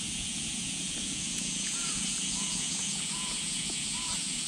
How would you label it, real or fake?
fake